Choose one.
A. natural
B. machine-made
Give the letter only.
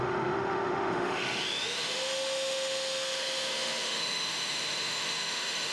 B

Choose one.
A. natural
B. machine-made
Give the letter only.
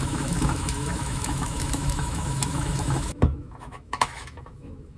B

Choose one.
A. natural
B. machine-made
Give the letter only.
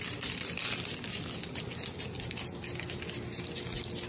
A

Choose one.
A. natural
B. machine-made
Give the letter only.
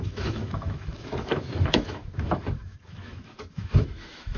B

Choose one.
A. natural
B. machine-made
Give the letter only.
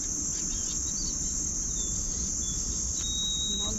A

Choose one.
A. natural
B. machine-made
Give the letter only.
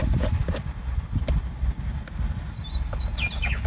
A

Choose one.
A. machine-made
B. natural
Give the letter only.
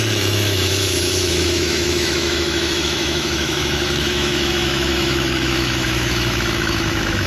A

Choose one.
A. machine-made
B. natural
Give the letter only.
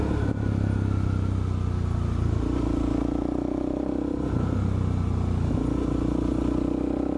B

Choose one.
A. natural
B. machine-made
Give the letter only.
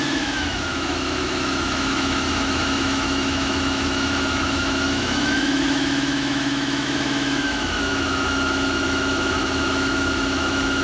B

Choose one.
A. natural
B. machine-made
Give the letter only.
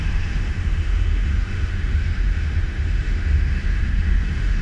B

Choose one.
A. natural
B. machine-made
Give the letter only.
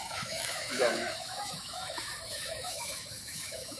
B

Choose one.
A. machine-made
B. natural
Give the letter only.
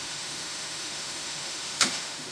A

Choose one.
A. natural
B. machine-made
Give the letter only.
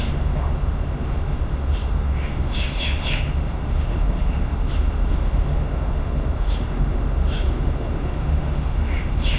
B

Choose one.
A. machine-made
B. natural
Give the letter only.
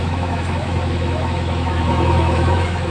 A